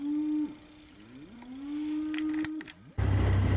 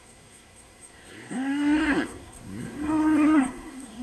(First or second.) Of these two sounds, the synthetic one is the second